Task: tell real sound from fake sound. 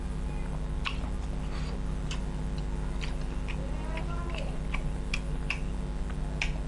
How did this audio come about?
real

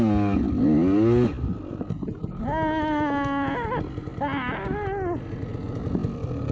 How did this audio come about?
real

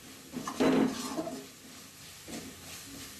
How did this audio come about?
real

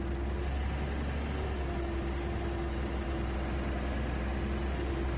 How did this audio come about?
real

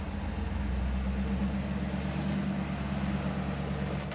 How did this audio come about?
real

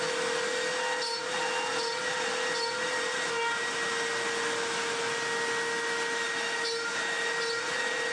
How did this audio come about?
real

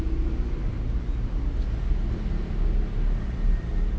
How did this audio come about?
real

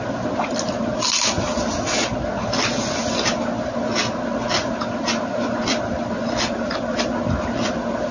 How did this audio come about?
real